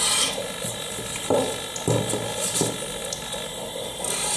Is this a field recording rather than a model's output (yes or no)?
yes